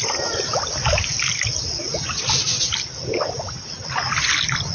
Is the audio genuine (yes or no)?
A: yes